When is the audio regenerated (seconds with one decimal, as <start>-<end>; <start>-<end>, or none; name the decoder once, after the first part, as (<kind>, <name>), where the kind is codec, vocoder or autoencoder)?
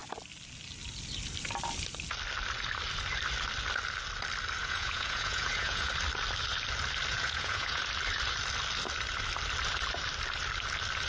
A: 4.6-5.9 (vocoder, Vocos); 7.1-7.8